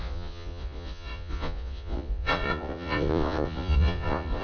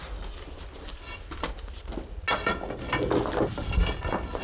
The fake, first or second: first